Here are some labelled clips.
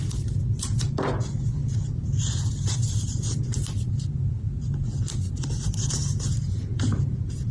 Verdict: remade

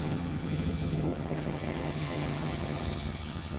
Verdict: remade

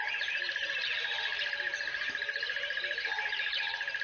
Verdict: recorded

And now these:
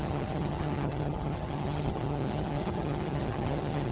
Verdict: remade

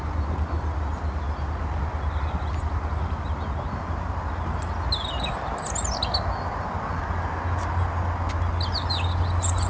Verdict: recorded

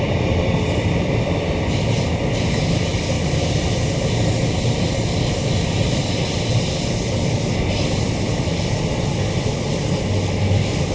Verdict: recorded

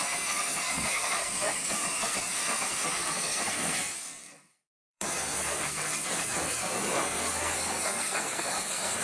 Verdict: remade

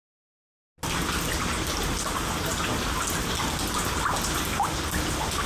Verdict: recorded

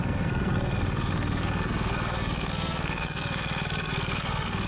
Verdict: remade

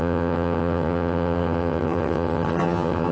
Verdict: remade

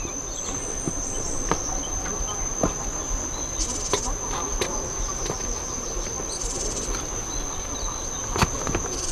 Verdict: recorded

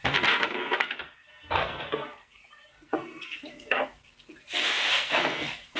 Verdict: remade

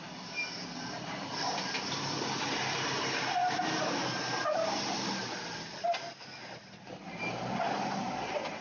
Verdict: recorded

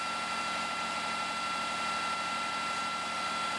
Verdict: recorded